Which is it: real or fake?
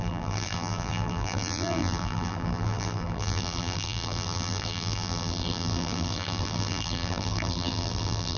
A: fake